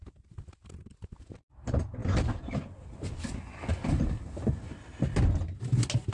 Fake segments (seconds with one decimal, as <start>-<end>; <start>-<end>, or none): none